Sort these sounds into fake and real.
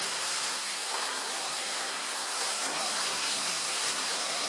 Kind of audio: fake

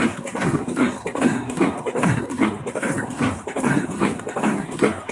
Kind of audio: fake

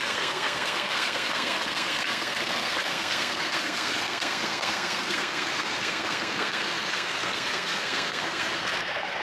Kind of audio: fake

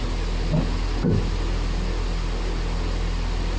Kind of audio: real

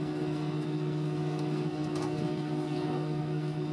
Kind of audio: fake